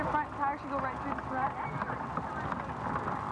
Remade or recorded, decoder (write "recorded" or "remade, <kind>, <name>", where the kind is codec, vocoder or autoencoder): recorded